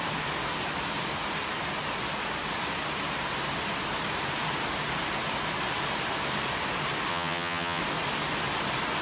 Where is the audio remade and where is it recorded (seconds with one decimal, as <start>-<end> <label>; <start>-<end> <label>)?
0.0-7.1 recorded; 7.1-7.8 remade; 7.8-9.0 recorded